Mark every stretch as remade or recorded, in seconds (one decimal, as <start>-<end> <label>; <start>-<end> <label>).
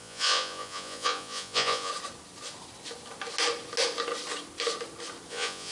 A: 0.0-1.9 remade; 1.9-5.3 recorded; 5.3-5.7 remade